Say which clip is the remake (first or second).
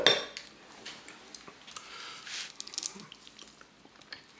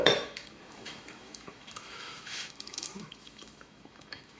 second